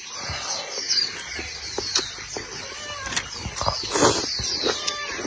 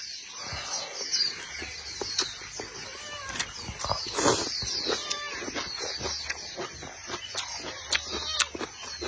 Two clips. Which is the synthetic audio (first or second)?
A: first